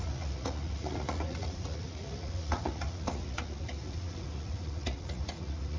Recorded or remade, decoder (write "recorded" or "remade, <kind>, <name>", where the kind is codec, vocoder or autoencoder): remade, vocoder, Vocos